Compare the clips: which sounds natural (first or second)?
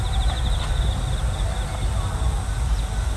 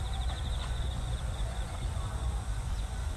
first